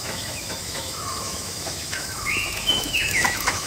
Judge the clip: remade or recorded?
remade